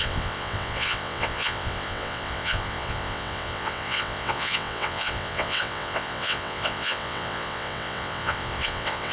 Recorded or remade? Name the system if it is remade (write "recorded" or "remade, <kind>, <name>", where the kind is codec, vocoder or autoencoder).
remade, vocoder, WaveNeXt